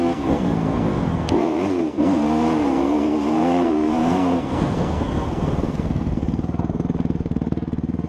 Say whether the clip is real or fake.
fake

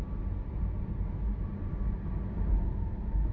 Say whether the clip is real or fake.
real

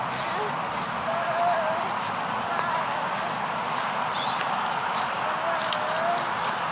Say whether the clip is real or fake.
real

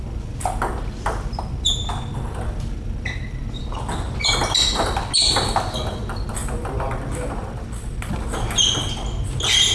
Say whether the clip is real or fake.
real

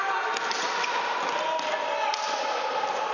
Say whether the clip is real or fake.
real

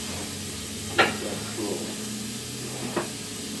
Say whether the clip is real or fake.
real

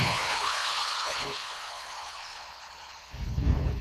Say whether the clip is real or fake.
fake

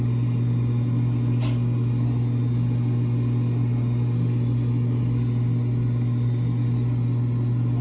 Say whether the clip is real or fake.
real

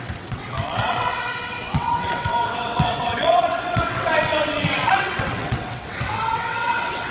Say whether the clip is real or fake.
fake